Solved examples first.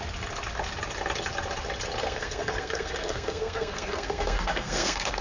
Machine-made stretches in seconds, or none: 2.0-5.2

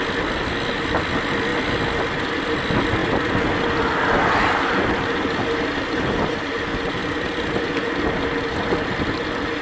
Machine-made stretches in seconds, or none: none

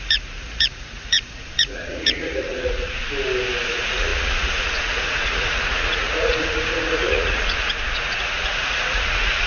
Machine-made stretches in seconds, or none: 0.0-3.0; 3.6-9.5

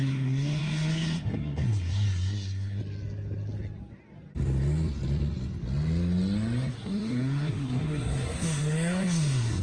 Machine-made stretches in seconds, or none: 0.0-2.8; 6.7-9.6